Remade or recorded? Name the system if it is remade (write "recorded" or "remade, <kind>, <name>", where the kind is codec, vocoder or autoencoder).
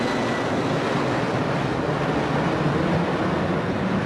recorded